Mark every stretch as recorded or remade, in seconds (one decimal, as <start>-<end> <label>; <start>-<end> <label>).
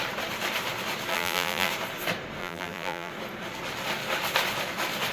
0.0-1.1 recorded; 1.1-1.7 remade; 1.7-2.4 recorded; 2.4-3.1 remade; 3.1-5.1 recorded